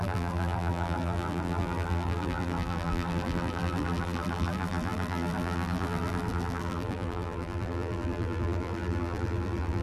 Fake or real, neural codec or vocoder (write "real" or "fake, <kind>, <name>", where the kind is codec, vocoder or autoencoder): fake, vocoder, BigVGAN v2